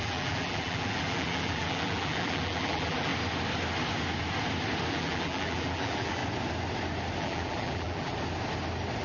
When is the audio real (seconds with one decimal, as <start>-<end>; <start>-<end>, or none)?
3.1-4.9; 6.2-7.2; 8.1-9.0